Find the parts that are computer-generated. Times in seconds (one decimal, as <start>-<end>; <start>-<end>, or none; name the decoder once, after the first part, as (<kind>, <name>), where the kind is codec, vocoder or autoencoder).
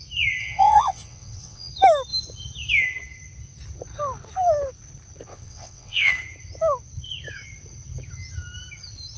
0.4-1.7 (vocoder, WaveNeXt); 5.3-6.1